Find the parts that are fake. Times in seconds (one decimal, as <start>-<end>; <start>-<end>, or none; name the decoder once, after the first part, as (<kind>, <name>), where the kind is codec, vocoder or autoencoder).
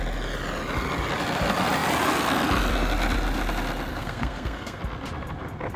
3.9-4.8 (codec, SNAC)